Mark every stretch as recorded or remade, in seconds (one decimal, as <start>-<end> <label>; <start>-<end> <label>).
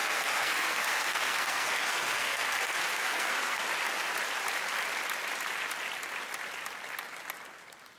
0.0-3.6 remade; 3.6-8.0 recorded